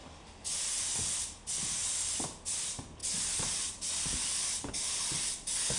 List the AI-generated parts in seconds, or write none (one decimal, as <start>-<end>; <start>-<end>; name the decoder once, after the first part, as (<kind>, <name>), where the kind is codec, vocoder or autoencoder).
0.0-0.5 (codec, DAC)